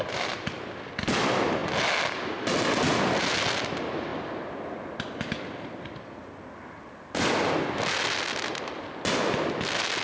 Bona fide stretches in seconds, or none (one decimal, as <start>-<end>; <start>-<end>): 0.0-10.0